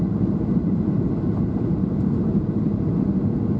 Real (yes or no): no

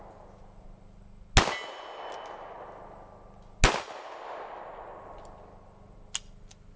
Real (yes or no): yes